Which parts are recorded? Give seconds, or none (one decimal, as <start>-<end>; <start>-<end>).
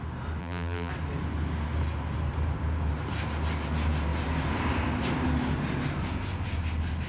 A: 0.0-0.4; 0.9-7.1